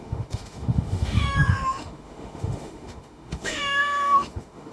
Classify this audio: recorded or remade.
remade